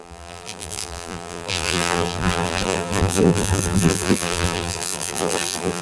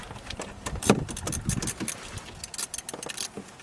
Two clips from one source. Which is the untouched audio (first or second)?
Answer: second